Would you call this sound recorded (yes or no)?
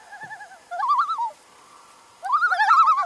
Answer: yes